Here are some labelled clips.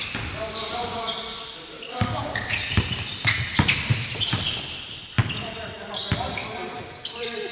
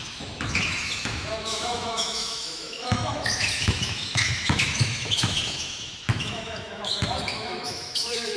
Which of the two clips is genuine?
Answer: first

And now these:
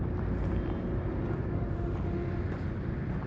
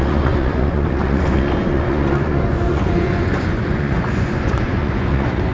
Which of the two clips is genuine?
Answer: first